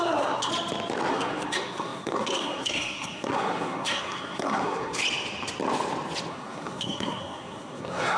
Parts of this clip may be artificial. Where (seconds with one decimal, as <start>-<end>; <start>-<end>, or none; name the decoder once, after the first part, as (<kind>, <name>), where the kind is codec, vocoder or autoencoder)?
0.0-0.5 (codec, SNAC); 1.1-5.0; 6.3-8.2